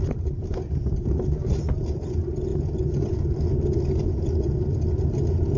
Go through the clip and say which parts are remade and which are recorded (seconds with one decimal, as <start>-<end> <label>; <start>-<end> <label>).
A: 0.0-5.6 recorded